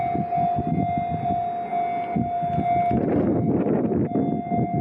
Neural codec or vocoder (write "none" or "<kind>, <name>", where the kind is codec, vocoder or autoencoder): none